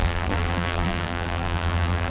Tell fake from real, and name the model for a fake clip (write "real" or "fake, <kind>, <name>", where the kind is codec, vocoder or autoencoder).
fake, vocoder, BigVGAN v2